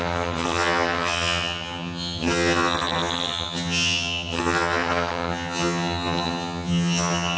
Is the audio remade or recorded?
remade